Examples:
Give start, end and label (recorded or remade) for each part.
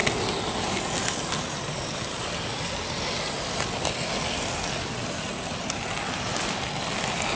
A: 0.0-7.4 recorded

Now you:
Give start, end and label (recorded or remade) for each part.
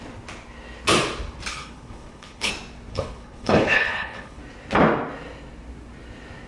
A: 0.0-1.5 recorded; 1.5-2.5 remade; 2.5-2.9 recorded; 2.9-4.4 remade; 4.4-6.5 recorded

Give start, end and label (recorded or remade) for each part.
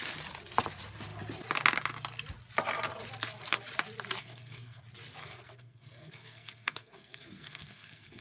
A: 0.0-4.2 recorded; 4.2-4.8 remade; 4.8-5.2 recorded; 5.2-8.2 remade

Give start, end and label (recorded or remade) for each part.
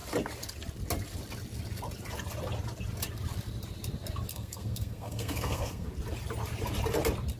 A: 0.0-4.3 recorded; 4.3-5.9 remade; 5.9-7.4 recorded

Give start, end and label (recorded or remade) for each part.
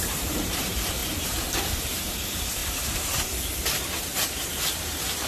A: 0.0-2.6 remade; 2.6-4.5 recorded; 4.5-5.3 remade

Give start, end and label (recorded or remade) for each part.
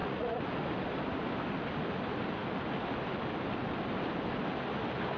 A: 0.0-0.5 remade; 0.5-5.2 recorded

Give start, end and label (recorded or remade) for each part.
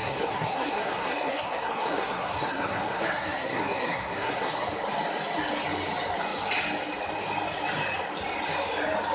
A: 0.0-4.5 remade; 4.5-9.1 recorded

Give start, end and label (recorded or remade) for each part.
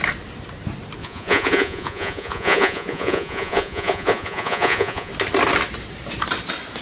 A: 0.0-1.0 recorded; 1.0-5.1 remade; 5.1-6.8 recorded